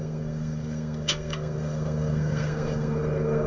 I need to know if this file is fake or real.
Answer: fake